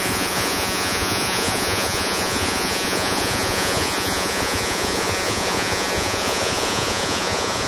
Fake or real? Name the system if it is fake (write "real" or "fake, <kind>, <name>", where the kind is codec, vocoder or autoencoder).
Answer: fake, vocoder, Vocos